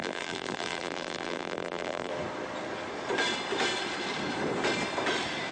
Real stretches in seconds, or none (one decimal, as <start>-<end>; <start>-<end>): 2.1-5.5